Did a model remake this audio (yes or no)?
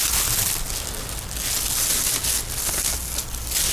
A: no